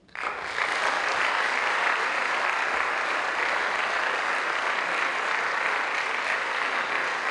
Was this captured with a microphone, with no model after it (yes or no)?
yes